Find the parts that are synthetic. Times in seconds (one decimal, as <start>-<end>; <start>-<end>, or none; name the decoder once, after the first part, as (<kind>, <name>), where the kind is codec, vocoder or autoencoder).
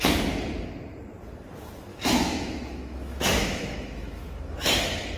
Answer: 1.9-5.2 (autoencoder, DAC-VAE)